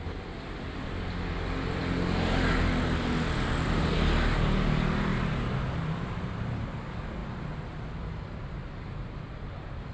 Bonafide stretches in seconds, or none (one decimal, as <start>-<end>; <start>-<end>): 0.0-5.1; 6.7-7.2